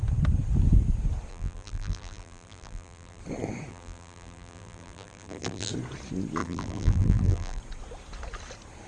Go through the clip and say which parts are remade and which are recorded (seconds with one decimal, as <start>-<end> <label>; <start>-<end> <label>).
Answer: 0.0-1.3 recorded; 1.3-3.2 remade; 3.2-3.7 recorded; 3.7-5.7 remade; 5.7-6.4 recorded; 6.4-7.6 remade; 7.6-8.9 recorded